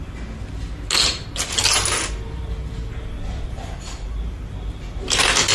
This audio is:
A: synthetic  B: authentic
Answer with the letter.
B